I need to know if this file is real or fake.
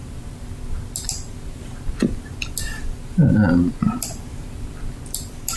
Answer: real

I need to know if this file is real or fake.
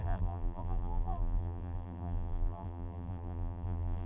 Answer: fake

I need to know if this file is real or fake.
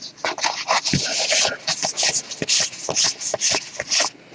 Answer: real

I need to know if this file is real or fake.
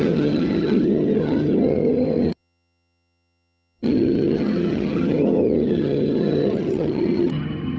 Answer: fake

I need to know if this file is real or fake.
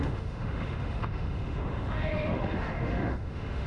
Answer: fake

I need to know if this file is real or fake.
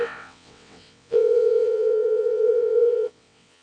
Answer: fake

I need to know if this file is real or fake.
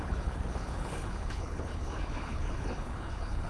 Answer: fake